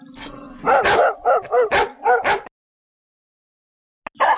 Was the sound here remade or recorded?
recorded